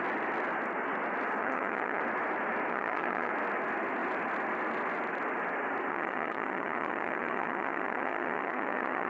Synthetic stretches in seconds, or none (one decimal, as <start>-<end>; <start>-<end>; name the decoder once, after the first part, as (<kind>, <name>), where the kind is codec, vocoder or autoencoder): 1.4-2.0 (vocoder, HiFi-GAN); 2.7-3.3; 5.9-9.1